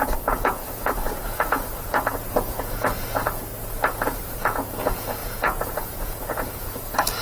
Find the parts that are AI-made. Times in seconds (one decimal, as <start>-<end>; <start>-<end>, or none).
0.0-3.5; 4.4-7.2